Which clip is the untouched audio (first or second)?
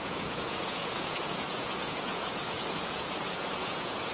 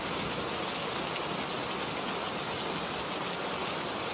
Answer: second